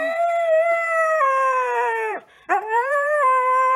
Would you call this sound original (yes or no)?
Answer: no